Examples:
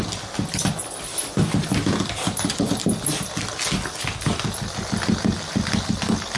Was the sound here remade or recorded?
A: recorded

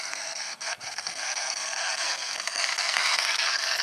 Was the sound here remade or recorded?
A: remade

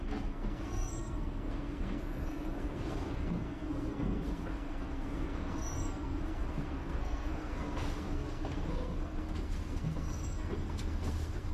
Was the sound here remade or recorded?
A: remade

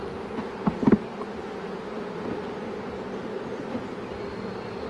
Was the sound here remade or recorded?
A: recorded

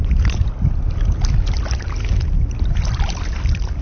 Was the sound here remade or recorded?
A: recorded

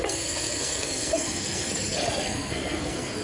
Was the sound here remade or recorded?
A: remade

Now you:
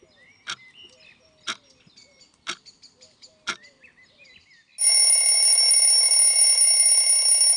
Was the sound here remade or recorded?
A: recorded